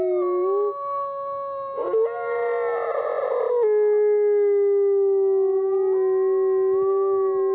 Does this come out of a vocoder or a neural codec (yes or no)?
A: no